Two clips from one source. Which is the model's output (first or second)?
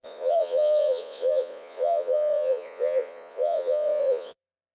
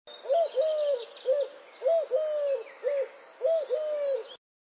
first